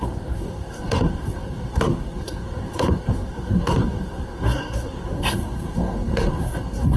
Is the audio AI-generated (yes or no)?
yes